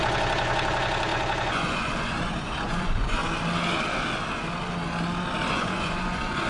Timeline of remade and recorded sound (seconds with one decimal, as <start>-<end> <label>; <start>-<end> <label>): 0.0-3.2 remade; 3.2-5.5 recorded; 5.5-6.5 remade